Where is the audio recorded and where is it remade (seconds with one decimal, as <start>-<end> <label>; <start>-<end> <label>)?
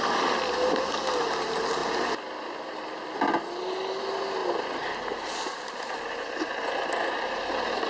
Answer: 0.0-7.9 recorded